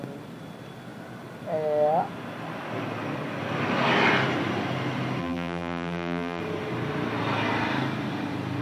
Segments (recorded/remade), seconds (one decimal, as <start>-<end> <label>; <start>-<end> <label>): 0.0-5.2 recorded; 5.2-6.4 remade; 6.4-8.6 recorded

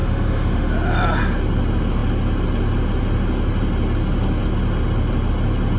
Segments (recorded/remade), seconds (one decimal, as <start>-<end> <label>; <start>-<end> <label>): 0.0-0.7 remade; 0.7-5.8 recorded